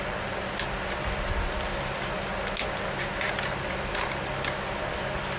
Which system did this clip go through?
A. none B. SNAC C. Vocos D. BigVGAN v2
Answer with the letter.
A